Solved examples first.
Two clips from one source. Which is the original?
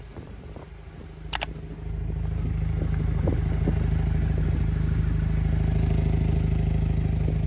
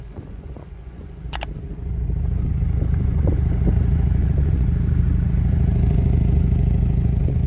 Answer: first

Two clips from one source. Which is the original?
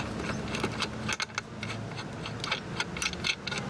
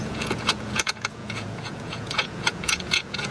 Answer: first